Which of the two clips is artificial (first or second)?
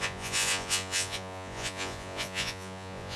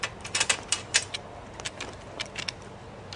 first